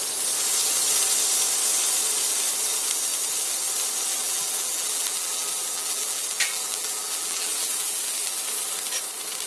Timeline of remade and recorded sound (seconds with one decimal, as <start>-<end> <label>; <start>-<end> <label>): 0.0-4.1 recorded; 4.1-8.4 remade; 8.4-9.5 recorded